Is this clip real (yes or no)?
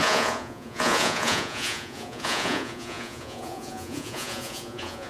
no